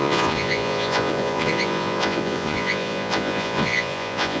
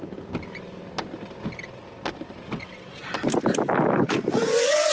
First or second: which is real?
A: second